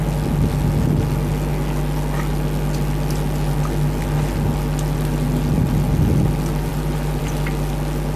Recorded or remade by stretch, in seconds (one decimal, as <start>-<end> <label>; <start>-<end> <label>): 0.0-6.7 recorded; 6.7-7.2 remade; 7.2-8.2 recorded